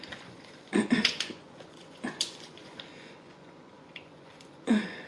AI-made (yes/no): yes